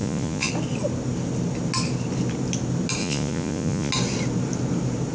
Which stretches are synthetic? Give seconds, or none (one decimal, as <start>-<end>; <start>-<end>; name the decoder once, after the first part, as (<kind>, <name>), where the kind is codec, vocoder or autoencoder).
0.0-0.5 (vocoder, Vocos); 3.0-3.9